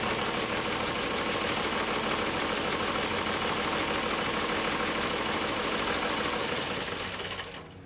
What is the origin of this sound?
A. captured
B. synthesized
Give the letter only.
A